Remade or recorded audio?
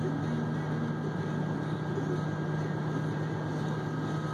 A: recorded